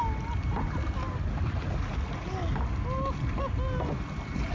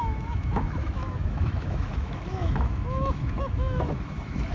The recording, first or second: first